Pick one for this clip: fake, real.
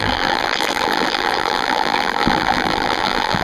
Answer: fake